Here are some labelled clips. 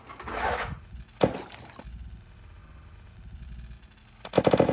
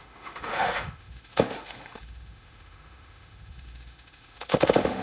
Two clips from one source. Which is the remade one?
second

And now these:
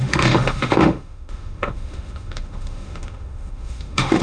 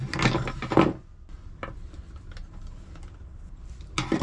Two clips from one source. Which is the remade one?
first